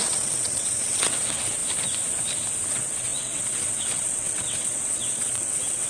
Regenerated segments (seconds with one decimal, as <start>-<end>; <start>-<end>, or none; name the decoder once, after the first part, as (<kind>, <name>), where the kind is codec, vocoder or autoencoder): 0.0-1.6 (vocoder, WaveNeXt); 2.7-5.9